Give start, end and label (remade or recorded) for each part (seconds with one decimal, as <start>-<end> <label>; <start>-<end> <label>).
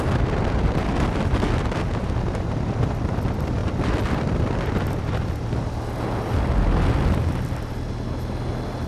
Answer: 0.0-8.9 recorded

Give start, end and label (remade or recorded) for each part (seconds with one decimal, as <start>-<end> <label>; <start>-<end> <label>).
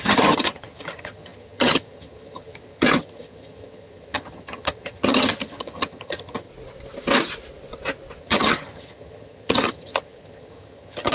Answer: 0.0-6.5 remade; 6.5-8.2 recorded; 8.2-11.1 remade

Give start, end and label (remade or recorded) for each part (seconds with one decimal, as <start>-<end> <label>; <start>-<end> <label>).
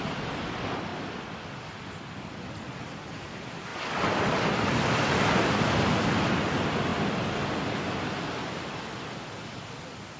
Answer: 0.0-10.2 recorded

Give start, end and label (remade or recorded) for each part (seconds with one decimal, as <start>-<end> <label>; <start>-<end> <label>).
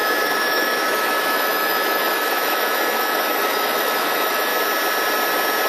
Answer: 0.0-4.5 remade; 4.5-5.7 recorded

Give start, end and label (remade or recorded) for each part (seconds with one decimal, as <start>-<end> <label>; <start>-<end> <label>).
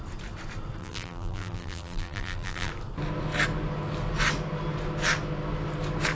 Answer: 0.0-0.8 recorded; 0.8-2.7 remade; 2.7-6.1 recorded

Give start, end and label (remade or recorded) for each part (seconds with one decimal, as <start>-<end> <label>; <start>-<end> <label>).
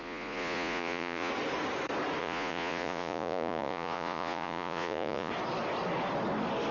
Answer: 0.0-1.3 remade; 1.3-2.2 recorded; 2.2-5.3 remade; 5.3-6.7 recorded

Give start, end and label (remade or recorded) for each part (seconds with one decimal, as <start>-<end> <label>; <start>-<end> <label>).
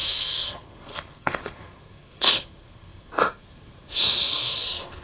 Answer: 0.0-5.0 remade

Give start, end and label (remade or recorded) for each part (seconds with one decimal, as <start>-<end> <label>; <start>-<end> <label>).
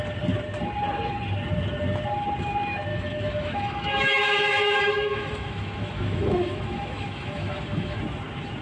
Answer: 0.0-2.9 recorded; 2.9-8.0 remade; 8.0-8.6 recorded